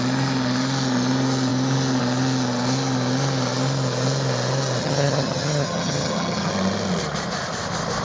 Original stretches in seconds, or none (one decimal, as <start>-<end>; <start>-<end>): 0.0-4.8; 6.5-8.0